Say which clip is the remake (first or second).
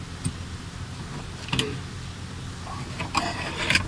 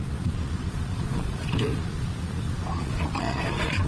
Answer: second